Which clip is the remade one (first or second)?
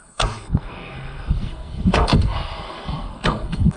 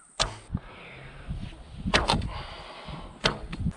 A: first